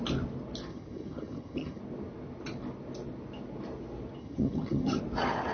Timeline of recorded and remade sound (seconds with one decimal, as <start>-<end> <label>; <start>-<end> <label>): 0.0-0.7 recorded; 0.7-1.8 remade; 1.8-4.2 recorded; 4.2-5.0 remade; 5.0-5.5 recorded